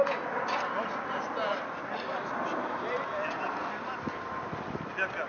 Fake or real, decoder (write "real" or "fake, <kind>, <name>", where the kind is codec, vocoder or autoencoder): real